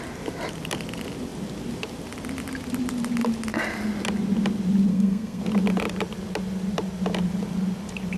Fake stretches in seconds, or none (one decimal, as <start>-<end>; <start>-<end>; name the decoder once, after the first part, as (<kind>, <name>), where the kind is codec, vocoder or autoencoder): 4.9-5.4 (codec, SNAC)